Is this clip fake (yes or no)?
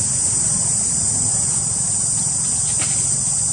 no